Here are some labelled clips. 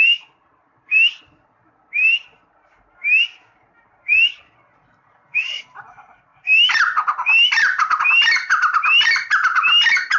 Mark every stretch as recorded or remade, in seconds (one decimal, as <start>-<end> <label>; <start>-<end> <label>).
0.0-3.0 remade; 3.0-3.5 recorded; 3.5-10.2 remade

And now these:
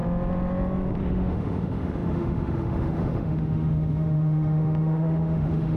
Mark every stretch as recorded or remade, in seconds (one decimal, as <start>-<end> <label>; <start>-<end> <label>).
0.0-1.1 recorded; 1.1-5.8 remade

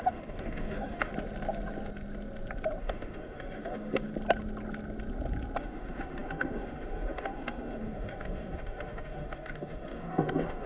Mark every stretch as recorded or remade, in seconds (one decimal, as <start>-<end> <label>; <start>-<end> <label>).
0.0-1.1 remade; 1.1-2.8 recorded; 2.8-4.1 remade; 4.1-5.6 recorded; 5.6-10.7 remade

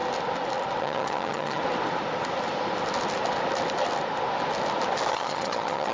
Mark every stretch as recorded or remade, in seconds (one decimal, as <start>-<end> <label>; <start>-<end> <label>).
0.0-0.8 recorded; 0.8-1.6 remade; 1.6-5.1 recorded; 5.1-5.9 remade